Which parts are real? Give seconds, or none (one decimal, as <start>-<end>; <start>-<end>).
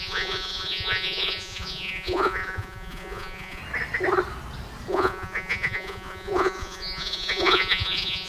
3.6-4.9